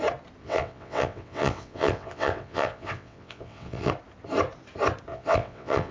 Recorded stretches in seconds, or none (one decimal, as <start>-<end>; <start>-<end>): 0.0-0.4; 3.9-5.1